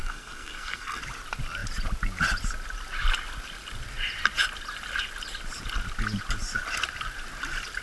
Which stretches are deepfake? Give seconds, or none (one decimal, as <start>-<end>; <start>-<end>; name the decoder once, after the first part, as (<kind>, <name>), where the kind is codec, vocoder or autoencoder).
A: 0.0-1.0 (codec, SNAC)